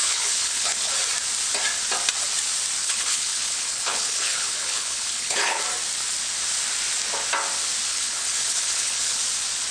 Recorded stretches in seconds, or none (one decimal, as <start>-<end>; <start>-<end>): 0.9-2.8; 5.6-7.9; 9.2-9.7